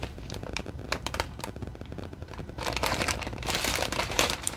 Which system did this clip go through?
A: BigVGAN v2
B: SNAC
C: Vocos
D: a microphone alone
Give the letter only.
A